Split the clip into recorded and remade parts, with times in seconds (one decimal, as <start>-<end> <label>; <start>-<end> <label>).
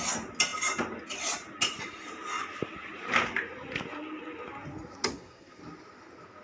0.0-5.1 recorded; 5.1-5.6 remade; 5.6-6.4 recorded